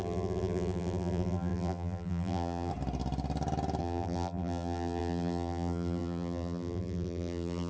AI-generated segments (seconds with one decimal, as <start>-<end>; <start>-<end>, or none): 0.0-2.7; 3.8-7.7